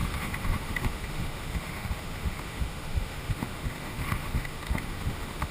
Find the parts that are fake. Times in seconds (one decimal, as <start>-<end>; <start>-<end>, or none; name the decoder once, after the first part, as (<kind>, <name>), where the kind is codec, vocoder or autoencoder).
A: 0.0-5.5 (autoencoder, DAC-VAE)